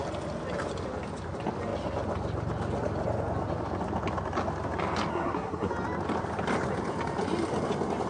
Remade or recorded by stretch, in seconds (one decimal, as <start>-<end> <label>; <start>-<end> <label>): 0.0-5.1 recorded; 5.1-5.7 remade; 5.7-8.1 recorded